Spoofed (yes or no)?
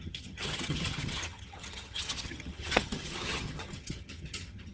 yes